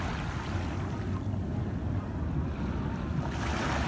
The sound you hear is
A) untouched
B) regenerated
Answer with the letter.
A